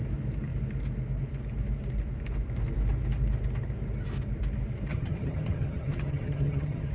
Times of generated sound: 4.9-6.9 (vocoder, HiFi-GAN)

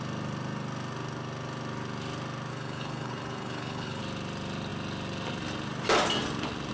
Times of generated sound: 2.5-4.0 (codec, HILCodec)

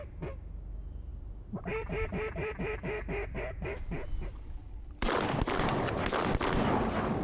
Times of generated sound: 1.1-5.4 (vocoder, BigVGAN v2)

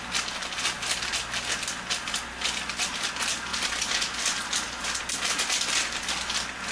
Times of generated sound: none

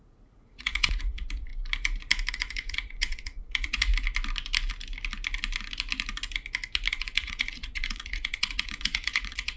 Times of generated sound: 0.0-1.5 (vocoder, Vocos); 2.3-3.9; 6.9-9.6

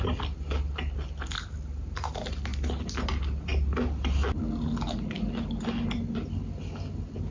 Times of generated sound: none

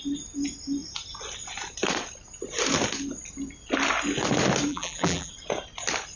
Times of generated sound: 4.7-5.3 (vocoder, BigVGAN v2)

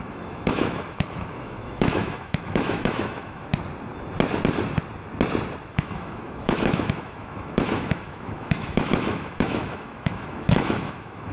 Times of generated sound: 0.0-3.5 (autoencoder, DAC-VAE); 5.7-11.3